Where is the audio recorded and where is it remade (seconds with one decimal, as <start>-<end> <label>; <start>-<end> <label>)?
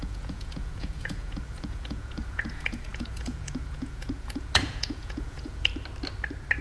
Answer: 0.0-5.7 remade; 5.7-6.6 recorded